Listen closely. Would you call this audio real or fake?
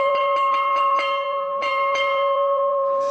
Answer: fake